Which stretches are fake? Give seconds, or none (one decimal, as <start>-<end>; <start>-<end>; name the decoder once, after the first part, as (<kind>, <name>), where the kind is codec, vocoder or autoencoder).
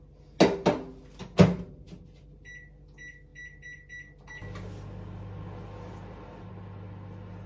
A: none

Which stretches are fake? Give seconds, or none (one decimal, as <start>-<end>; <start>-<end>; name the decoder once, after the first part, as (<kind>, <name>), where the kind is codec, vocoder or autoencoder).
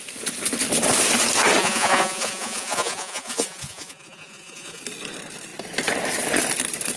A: 1.6-4.8 (vocoder, Vocos)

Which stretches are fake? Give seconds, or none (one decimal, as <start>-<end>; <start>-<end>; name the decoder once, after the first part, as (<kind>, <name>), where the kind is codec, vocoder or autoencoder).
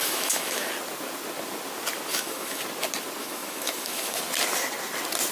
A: 0.0-0.7 (autoencoder, DAC-VAE); 2.1-2.6; 3.2-4.2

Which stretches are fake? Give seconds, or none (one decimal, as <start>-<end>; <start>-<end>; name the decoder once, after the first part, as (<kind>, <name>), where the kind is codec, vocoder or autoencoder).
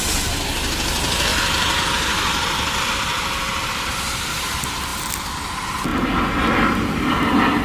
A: 1.3-3.9 (vocoder, BigVGAN v2); 4.9-5.5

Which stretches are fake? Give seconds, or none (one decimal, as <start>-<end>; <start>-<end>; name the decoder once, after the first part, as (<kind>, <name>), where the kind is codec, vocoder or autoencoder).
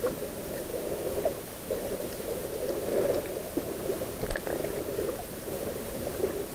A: 0.0-0.7 (vocoder, BigVGAN v2); 1.5-6.5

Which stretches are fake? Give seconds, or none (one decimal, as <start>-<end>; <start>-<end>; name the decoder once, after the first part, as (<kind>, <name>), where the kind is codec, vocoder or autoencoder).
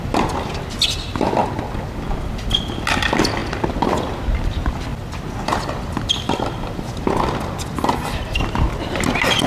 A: none